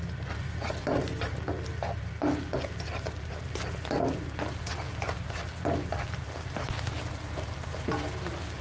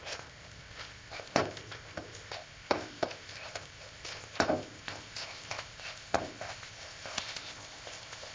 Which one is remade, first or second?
second